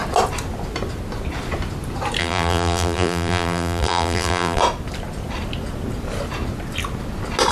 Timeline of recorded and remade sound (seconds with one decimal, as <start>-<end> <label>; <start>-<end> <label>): 0.0-2.2 recorded; 2.2-4.6 remade; 4.6-7.5 recorded

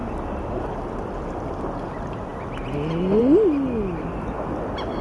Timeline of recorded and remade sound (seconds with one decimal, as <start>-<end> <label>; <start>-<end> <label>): 0.0-5.0 recorded

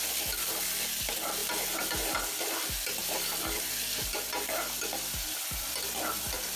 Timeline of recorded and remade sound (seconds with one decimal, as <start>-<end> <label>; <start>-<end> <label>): 0.0-1.4 recorded; 1.4-1.9 remade; 1.9-3.0 recorded; 3.0-6.6 remade

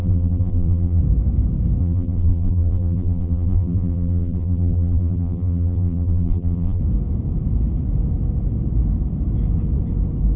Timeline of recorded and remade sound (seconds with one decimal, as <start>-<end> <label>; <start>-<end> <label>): 0.0-1.0 remade; 1.0-1.8 recorded; 1.8-6.8 remade; 6.8-10.4 recorded

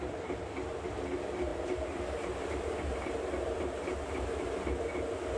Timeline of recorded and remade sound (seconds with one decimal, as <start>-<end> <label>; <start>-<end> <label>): 0.0-1.5 recorded; 1.5-4.2 remade; 4.2-5.4 recorded

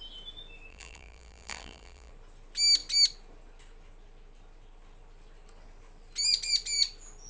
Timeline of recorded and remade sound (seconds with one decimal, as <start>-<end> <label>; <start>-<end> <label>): 0.0-0.7 recorded; 0.7-2.1 remade; 2.1-7.3 recorded